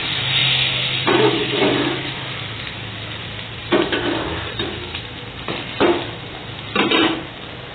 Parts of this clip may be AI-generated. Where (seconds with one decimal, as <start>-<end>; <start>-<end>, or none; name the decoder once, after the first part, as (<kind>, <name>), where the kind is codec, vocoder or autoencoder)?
none